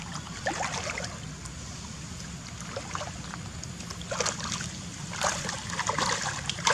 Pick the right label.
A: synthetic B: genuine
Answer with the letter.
B